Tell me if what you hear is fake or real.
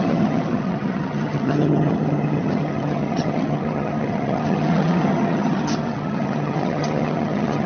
fake